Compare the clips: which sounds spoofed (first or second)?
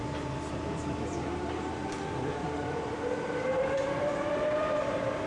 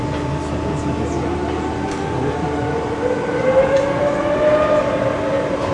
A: first